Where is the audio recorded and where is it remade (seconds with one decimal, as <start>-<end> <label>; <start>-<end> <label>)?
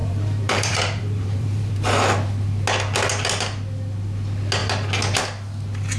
0.0-1.7 remade; 1.7-6.0 recorded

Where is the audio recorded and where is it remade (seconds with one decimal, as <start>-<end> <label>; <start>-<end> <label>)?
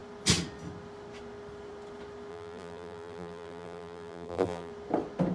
0.0-2.3 recorded; 2.3-4.7 remade; 4.7-5.3 recorded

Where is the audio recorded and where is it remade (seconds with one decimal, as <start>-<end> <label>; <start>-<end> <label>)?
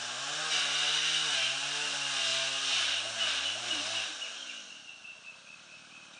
0.0-6.2 recorded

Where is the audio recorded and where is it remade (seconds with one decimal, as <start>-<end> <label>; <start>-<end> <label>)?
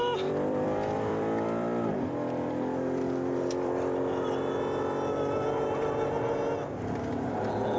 0.0-4.4 remade; 4.4-7.8 recorded